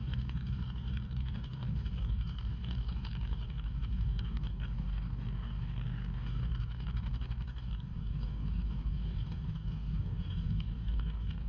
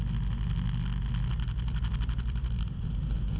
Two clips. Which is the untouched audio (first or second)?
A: second